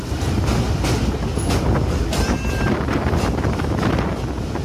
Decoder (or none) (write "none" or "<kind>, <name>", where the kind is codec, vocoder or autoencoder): none